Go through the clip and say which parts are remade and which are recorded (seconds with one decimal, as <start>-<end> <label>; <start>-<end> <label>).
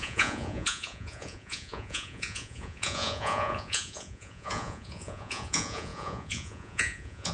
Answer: 0.0-7.3 remade